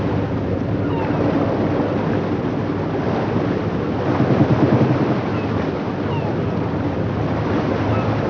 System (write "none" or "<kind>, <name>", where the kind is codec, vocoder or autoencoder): none